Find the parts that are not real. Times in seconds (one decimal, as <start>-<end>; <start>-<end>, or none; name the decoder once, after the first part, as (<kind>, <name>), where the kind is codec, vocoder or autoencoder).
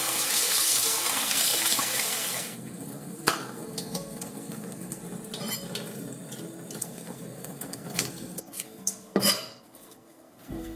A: 0.0-5.0 (codec, SNAC); 6.8-10.8